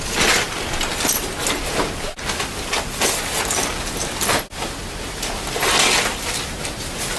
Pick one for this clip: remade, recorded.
recorded